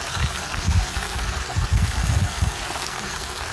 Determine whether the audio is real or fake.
fake